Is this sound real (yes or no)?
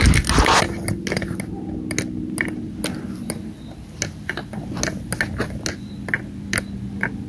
yes